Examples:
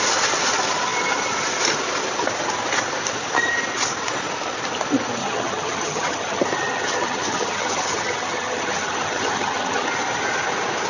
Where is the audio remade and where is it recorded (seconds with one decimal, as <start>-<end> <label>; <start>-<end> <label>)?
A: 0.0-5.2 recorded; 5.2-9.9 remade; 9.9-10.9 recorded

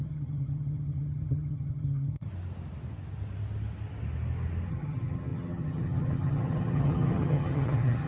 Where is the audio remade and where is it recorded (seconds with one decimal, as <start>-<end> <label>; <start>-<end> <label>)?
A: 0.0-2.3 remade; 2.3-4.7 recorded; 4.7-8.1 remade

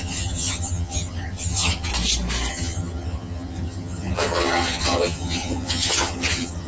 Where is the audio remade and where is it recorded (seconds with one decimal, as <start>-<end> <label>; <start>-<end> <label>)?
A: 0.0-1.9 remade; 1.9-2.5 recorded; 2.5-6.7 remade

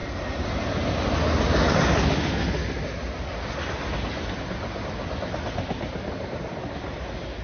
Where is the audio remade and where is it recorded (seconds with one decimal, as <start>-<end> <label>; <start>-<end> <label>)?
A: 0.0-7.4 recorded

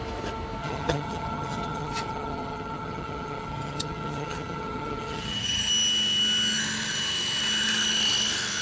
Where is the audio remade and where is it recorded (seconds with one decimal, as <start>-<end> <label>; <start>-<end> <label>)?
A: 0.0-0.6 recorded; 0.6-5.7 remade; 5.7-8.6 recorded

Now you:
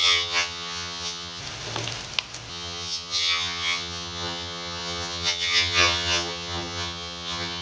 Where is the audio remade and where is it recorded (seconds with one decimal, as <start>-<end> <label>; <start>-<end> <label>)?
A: 0.0-1.4 remade; 1.4-2.5 recorded; 2.5-7.6 remade

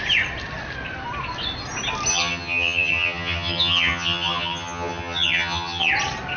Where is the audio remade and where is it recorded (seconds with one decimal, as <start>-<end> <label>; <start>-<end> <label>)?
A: 0.0-2.1 recorded; 2.1-5.9 remade; 5.9-6.4 recorded